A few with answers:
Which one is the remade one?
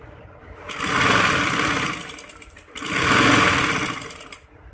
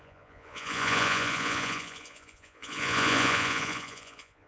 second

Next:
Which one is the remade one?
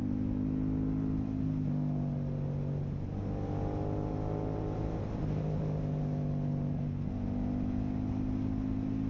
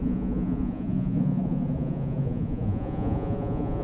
second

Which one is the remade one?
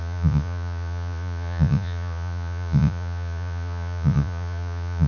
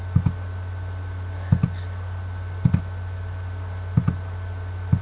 first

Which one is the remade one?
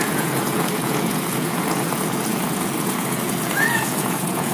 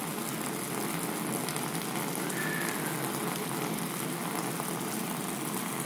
first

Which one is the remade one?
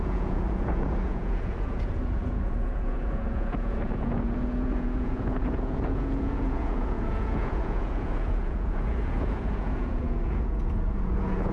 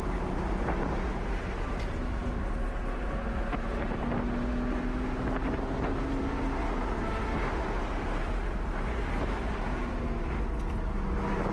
first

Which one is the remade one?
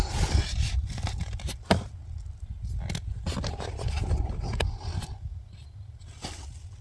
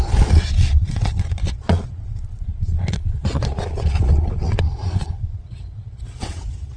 second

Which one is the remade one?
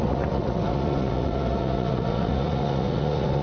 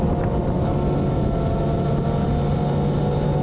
first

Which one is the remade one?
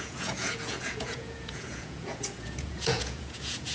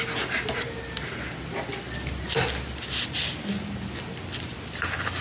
first